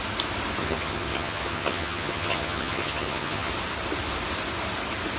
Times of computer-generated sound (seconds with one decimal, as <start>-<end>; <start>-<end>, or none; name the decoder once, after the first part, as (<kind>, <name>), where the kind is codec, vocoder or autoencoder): 0.6-3.5 (vocoder, HiFi-GAN)